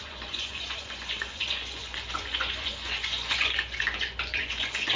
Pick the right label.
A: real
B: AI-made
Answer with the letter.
B